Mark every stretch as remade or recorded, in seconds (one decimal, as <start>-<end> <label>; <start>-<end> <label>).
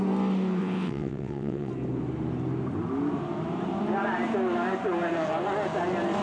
0.0-0.6 recorded; 0.6-1.7 remade; 1.7-6.2 recorded